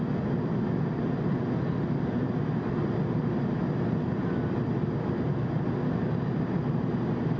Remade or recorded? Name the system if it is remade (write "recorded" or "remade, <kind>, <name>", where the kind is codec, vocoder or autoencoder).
recorded